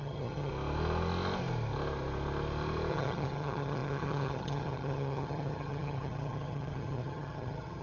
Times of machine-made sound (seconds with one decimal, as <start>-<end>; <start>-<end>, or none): 0.0-0.5; 2.9-7.8